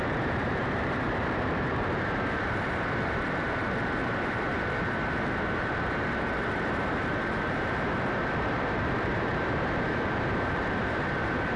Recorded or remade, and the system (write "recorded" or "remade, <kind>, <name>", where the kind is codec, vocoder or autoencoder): remade, vocoder, BigVGAN v2